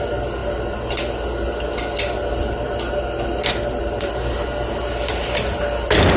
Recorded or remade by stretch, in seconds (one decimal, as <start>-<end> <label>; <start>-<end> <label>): 0.0-6.2 recorded